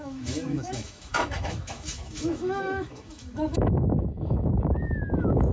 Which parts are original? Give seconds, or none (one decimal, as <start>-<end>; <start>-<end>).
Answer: none